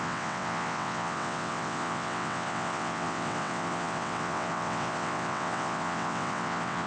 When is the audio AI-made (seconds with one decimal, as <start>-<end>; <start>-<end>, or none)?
0.0-6.9